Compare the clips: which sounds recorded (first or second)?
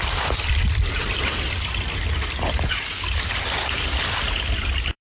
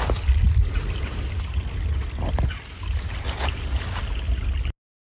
second